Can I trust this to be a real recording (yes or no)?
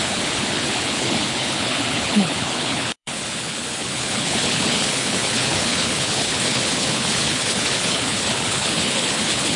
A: no